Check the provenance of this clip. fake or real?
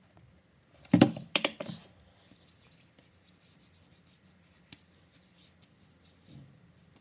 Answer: real